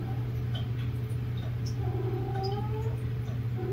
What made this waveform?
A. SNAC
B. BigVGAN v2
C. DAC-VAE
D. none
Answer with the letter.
D